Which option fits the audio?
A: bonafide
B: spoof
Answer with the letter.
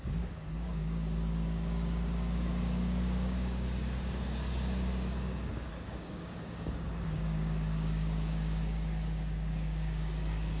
B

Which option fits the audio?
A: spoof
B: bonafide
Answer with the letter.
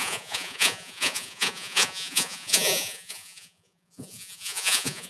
A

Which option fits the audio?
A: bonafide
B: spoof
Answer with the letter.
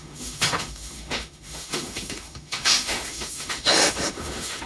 B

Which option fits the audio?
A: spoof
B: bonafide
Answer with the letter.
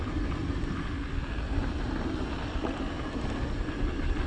B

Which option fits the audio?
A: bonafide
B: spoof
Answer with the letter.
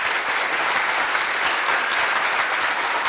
A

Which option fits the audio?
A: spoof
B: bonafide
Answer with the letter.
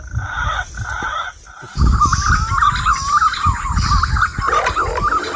B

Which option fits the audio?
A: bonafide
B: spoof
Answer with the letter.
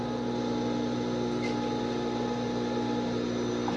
A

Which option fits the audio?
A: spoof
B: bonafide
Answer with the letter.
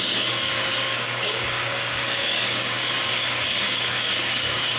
A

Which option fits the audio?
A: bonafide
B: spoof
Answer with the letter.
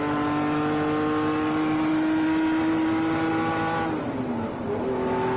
B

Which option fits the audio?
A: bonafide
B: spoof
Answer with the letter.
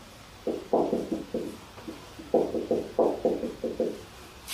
A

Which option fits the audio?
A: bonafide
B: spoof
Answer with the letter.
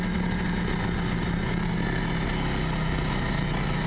A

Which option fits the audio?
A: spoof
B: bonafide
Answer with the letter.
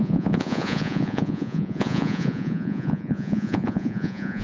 A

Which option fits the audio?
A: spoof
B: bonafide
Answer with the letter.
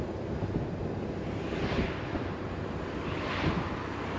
B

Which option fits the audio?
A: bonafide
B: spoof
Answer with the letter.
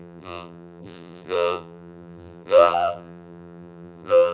B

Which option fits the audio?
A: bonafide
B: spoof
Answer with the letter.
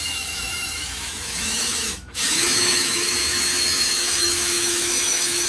B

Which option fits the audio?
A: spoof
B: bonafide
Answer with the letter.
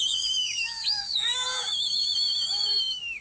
A